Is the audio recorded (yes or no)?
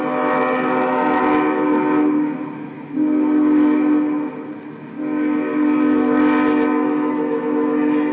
yes